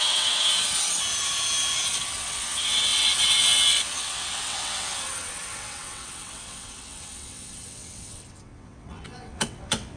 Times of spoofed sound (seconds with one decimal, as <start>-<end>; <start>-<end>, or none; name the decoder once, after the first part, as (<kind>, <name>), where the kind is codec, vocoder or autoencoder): 0.0-0.5 (vocoder, WaveNeXt); 1.9-10.0